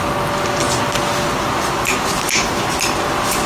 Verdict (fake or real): real